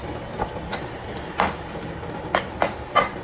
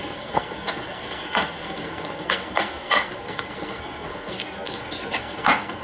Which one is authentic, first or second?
first